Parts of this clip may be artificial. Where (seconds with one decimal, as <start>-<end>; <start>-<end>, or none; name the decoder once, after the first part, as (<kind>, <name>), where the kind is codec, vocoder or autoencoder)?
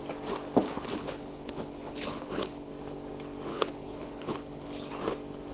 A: 0.6-2.7 (codec, HILCodec); 3.5-4.9